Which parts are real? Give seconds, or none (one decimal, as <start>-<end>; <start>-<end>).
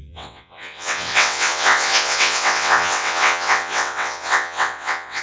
none